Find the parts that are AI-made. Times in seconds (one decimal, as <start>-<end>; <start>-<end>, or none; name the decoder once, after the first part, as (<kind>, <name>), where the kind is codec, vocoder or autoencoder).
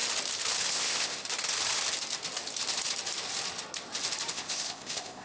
0.7-1.2 (codec, ZipCodec); 4.3-5.2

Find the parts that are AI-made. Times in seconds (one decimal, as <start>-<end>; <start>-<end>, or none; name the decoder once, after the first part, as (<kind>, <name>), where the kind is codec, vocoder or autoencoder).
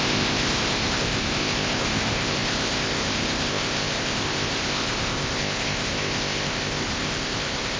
0.0-7.8 (codec, ZipCodec)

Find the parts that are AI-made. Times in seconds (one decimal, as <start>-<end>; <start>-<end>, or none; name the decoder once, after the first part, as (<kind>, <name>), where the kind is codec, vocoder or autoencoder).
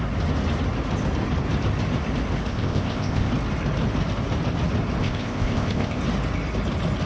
2.5-3.3 (codec, ZipCodec); 5.0-6.0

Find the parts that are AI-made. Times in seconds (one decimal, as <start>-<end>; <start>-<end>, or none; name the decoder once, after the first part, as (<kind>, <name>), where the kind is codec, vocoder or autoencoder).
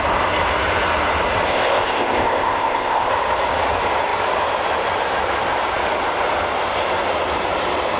1.5-3.1 (codec, ZipCodec)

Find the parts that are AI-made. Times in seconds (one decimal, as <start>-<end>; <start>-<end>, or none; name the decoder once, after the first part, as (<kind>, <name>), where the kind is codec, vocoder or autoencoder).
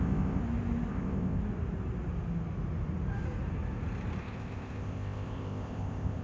0.0-0.4 (codec, ZipCodec); 0.9-1.4; 4.2-6.2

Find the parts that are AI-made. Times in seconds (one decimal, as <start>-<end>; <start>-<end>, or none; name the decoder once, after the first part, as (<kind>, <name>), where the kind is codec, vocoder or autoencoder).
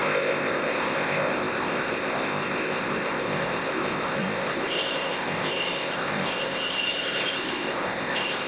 0.0-8.5 (codec, ZipCodec)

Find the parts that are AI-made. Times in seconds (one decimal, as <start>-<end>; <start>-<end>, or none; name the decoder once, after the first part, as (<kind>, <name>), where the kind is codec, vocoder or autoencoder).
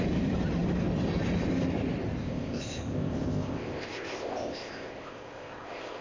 2.2-6.0 (codec, ZipCodec)